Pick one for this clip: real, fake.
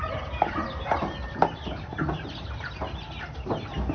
real